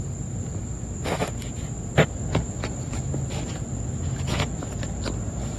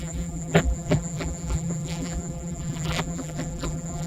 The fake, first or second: second